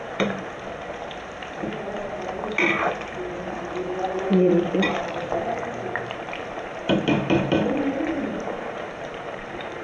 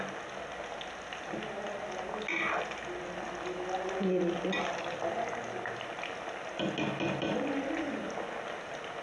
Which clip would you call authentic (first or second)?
second